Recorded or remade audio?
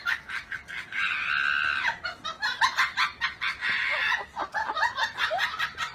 recorded